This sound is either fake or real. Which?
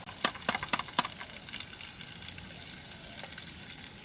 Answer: real